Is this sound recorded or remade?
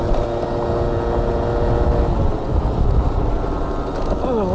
recorded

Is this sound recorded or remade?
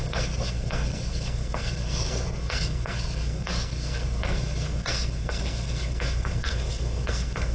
remade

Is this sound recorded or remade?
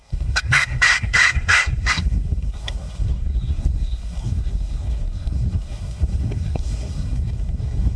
remade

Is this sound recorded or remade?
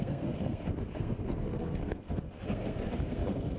remade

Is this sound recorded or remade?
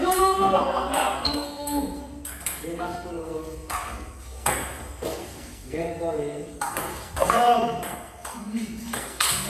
remade